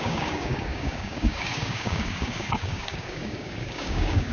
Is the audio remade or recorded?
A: remade